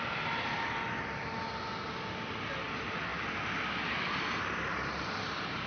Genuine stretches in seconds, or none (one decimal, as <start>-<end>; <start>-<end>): 0.0-5.7